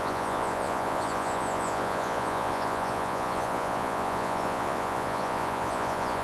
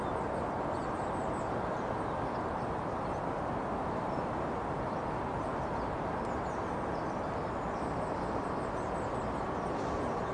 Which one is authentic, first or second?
second